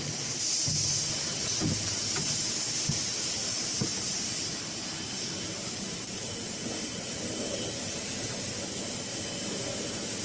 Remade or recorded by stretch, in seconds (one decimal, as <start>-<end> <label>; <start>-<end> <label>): 0.0-3.5 recorded; 3.5-8.5 remade; 8.5-10.2 recorded